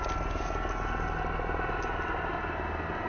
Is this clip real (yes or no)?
yes